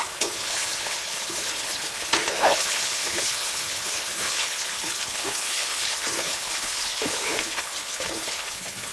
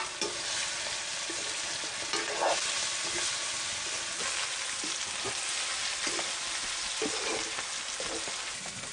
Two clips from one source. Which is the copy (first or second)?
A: first